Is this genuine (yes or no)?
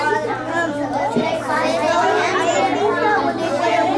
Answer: yes